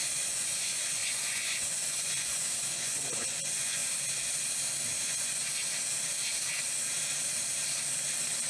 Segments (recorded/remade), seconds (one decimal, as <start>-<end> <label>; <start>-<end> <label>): 0.0-3.8 remade; 3.8-5.0 recorded; 5.0-5.4 remade; 5.4-8.5 recorded